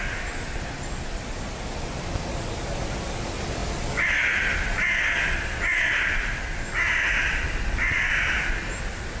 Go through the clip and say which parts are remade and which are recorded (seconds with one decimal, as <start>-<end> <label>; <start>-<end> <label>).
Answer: 0.0-9.2 recorded